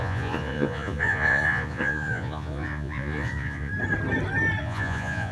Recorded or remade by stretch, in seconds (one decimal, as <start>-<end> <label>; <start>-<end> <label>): 0.0-3.7 remade; 3.7-4.6 recorded; 4.6-5.3 remade